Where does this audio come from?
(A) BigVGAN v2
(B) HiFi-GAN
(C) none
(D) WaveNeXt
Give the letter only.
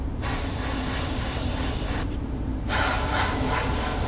A